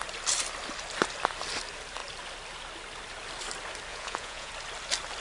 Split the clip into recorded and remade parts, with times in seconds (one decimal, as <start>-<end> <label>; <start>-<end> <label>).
0.0-3.9 recorded; 3.9-4.5 remade; 4.5-5.2 recorded